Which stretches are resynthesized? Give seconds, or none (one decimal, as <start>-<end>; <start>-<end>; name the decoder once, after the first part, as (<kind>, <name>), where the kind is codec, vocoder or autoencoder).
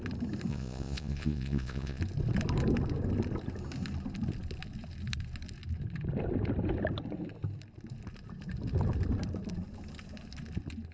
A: 0.5-2.0 (vocoder, Vocos)